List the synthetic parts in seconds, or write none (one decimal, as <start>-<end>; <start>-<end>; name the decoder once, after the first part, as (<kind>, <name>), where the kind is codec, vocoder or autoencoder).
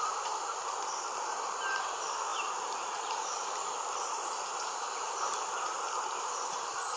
none